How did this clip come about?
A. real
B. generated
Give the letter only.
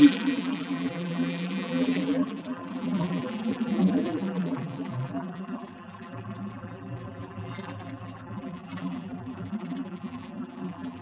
B